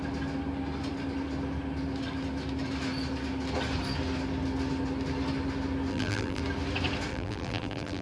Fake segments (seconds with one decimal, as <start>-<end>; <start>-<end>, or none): 5.9-6.4; 7.1-8.0

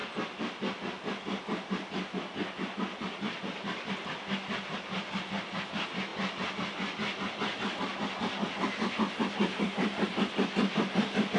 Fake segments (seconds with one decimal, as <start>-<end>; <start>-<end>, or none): none

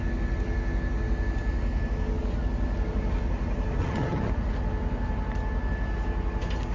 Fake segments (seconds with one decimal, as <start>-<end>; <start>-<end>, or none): 3.8-4.3

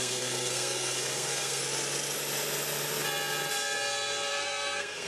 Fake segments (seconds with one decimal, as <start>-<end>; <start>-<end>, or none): 0.0-1.6; 4.3-5.1

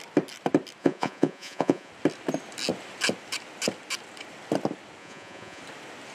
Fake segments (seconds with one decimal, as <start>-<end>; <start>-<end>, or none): 0.8-1.9; 5.0-5.6

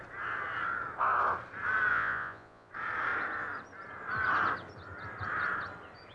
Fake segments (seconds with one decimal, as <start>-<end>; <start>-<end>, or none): 1.9-2.7